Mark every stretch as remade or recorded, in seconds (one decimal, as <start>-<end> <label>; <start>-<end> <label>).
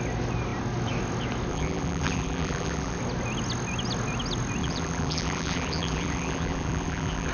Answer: 0.0-1.5 recorded; 1.5-3.0 remade; 3.0-4.6 recorded; 4.6-7.3 remade